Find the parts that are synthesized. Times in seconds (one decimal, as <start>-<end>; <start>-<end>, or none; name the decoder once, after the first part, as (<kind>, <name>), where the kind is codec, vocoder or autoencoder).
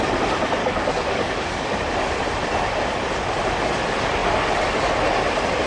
0.6-1.8 (codec, DAC)